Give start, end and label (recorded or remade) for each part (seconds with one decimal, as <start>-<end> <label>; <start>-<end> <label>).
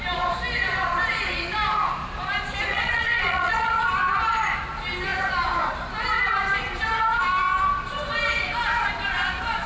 0.0-2.7 recorded; 2.7-3.9 remade; 3.9-9.7 recorded